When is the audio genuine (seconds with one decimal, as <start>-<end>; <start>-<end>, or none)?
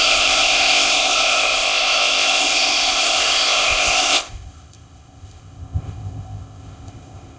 none